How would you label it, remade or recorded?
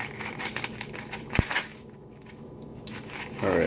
remade